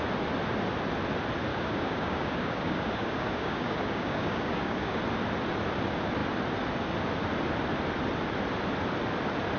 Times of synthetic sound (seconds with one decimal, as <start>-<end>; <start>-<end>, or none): 1.5-5.0